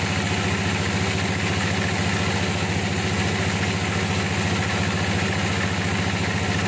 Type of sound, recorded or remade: recorded